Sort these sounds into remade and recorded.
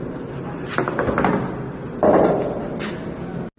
recorded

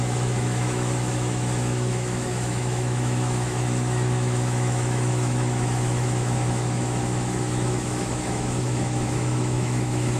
remade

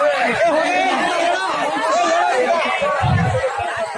recorded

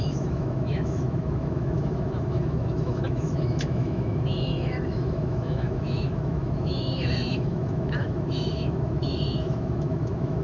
remade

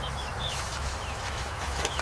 remade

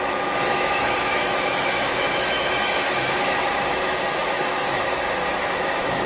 remade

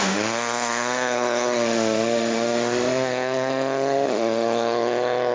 remade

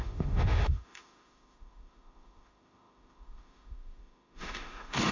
remade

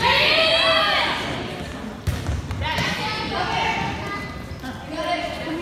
recorded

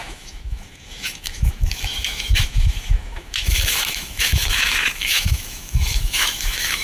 remade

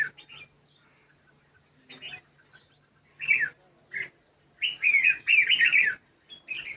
recorded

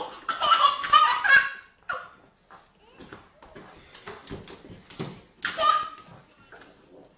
recorded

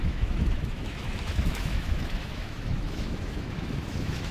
remade